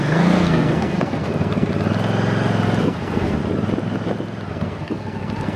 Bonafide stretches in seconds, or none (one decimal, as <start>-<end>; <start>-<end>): 1.7-2.8; 3.4-4.5